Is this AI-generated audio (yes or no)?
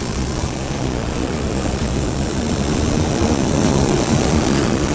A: yes